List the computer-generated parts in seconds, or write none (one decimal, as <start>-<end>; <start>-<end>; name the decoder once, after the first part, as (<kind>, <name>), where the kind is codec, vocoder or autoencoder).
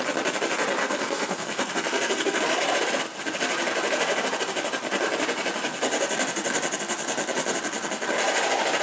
0.8-2.6 (codec, SNAC)